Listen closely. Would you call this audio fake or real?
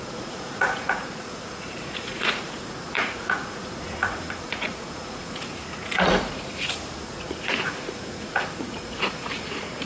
fake